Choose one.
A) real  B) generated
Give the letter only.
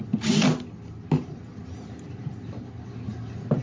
A